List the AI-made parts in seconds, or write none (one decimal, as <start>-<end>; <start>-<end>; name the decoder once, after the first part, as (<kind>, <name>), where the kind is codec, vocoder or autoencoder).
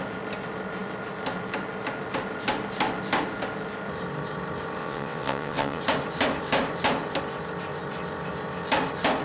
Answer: 4.8-5.8 (vocoder, WaveNeXt)